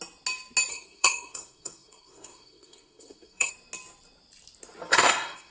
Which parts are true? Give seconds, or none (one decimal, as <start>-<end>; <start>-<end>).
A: 0.0-0.7; 3.5-4.9